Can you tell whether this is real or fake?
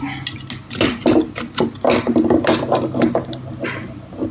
real